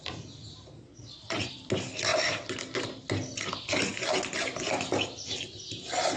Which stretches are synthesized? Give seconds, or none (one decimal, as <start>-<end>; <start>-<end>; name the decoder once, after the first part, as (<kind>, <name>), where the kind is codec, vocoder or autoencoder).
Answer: 0.9-1.5 (vocoder, Vocos)